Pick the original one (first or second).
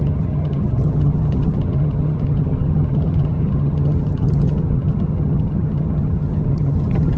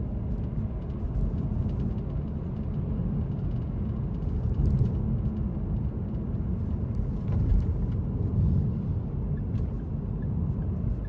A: second